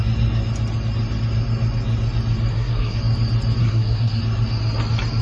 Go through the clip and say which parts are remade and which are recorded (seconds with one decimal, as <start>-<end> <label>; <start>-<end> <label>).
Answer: 0.0-2.5 recorded; 2.5-3.0 remade; 3.0-3.6 recorded; 3.6-4.2 remade; 4.2-5.2 recorded